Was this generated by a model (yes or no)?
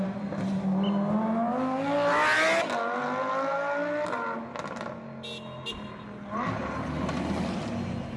no